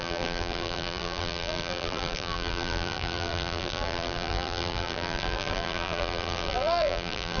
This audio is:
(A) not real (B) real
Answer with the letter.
A